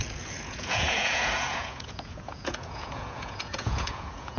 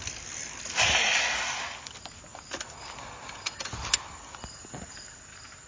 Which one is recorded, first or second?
second